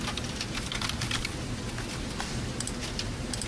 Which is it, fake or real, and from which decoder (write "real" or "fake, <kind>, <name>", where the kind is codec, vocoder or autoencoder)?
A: real